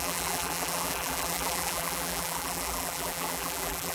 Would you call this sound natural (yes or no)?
no